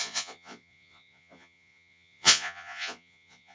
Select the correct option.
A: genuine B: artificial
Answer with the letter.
B